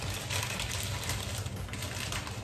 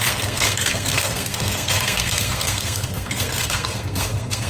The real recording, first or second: first